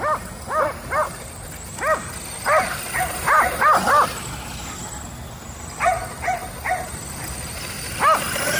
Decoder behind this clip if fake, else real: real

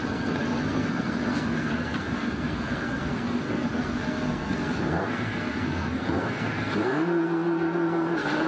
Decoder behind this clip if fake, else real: fake, codec, SNAC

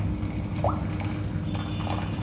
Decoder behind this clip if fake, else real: real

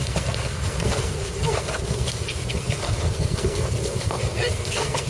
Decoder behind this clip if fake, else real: fake, codec, SNAC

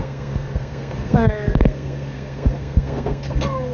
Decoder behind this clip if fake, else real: fake, codec, SNAC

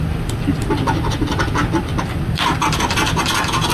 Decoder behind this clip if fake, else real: real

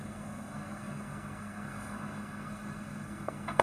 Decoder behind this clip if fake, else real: fake, codec, SNAC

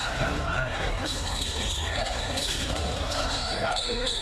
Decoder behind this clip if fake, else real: fake, codec, SNAC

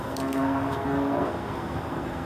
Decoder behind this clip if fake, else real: fake, codec, SNAC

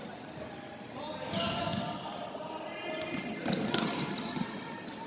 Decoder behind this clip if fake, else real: real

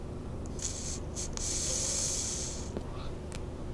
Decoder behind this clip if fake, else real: real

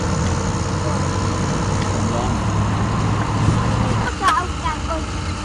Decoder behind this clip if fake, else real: real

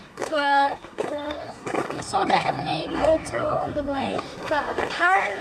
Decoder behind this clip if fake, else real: fake, codec, SNAC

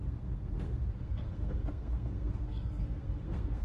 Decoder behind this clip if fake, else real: fake, codec, SNAC